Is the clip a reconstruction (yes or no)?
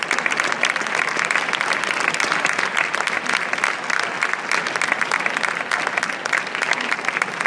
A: no